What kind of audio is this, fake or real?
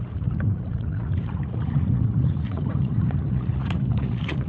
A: fake